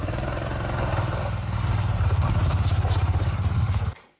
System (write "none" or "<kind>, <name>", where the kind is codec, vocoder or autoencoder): vocoder, BigVGAN v2